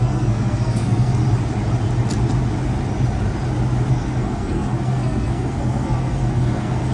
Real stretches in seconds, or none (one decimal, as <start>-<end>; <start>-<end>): 1.2-3.9